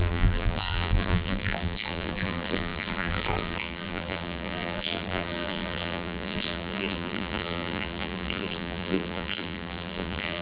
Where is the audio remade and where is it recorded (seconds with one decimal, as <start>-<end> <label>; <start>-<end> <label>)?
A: 0.0-10.4 remade